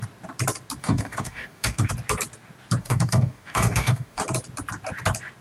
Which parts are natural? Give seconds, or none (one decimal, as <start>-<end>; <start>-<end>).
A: 0.0-0.8; 1.9-2.8; 4.2-5.4